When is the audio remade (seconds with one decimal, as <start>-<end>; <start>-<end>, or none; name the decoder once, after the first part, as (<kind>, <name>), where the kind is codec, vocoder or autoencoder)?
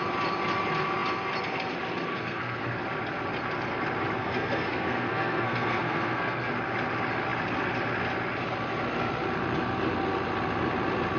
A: 2.1-2.6 (codec, SNAC); 4.2-6.5